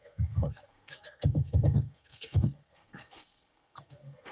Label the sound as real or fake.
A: fake